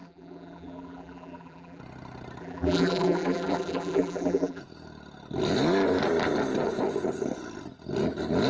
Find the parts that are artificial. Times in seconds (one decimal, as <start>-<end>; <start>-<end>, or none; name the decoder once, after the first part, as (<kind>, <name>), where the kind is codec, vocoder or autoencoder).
0.0-1.8 (vocoder, BigVGAN v2); 2.4-4.6